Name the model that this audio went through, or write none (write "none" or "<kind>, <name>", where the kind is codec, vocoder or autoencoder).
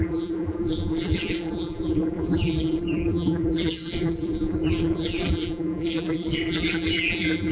vocoder, BigVGAN v2